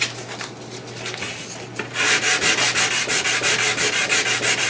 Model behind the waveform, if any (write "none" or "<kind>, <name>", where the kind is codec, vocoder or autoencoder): none